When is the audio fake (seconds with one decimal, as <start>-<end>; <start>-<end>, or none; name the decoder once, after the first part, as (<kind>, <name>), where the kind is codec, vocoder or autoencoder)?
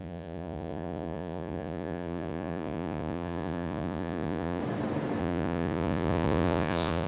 0.0-4.6 (vocoder, Vocos); 5.2-7.1